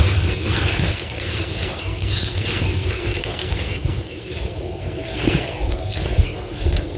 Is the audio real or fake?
fake